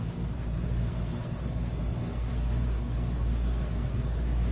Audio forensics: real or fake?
fake